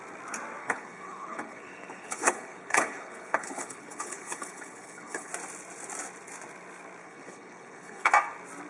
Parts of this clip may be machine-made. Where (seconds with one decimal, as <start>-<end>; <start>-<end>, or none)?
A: 0.6-5.3; 7.0-8.1

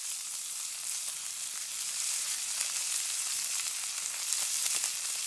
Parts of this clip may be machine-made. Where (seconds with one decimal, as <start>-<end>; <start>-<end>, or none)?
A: none

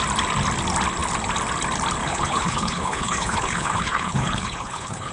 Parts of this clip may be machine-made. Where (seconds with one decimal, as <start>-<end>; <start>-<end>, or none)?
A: 2.0-5.1

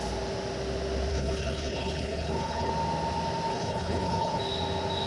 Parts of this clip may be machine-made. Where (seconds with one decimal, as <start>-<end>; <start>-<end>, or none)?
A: 1.1-2.7; 3.5-4.4